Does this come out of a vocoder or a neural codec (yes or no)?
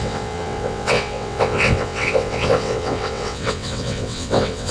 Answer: yes